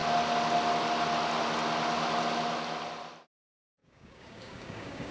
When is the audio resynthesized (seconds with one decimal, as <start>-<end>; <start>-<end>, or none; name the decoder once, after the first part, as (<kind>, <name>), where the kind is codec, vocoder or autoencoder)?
3.8-5.1 (codec, DAC)

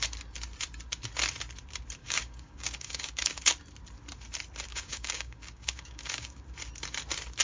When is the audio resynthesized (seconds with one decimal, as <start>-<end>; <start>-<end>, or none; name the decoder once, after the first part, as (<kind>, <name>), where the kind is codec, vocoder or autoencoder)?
2.0-3.4 (codec, DAC); 4.7-6.4